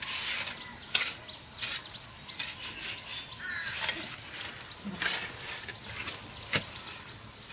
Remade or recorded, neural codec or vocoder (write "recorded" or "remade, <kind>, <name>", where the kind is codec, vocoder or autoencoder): recorded